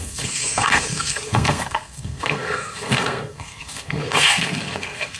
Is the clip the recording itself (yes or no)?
no